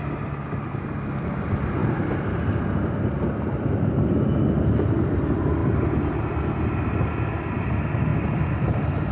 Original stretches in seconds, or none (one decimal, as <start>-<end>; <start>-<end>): 0.0-1.8; 4.1-8.1